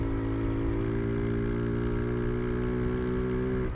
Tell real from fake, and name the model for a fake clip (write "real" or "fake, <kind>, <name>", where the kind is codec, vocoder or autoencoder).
real